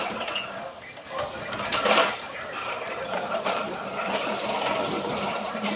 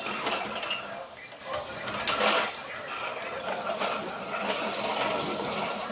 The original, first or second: second